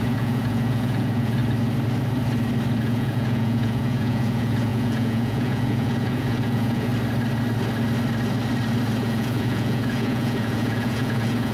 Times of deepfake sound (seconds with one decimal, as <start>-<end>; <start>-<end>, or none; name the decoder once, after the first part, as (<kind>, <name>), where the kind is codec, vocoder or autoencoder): 0.0-1.4 (vocoder, Vocos); 2.8-6.9; 9.0-11.5